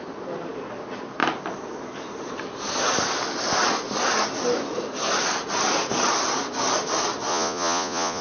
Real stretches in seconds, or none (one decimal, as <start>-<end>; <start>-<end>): 0.0-7.3